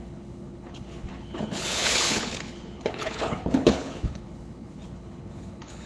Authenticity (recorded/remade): remade